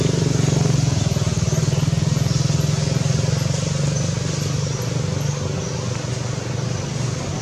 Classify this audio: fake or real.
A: real